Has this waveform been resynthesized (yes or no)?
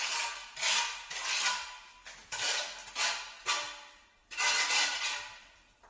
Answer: no